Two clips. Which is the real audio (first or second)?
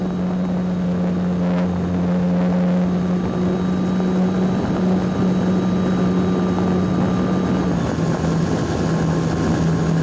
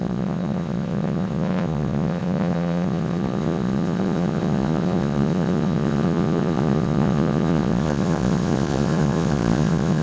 first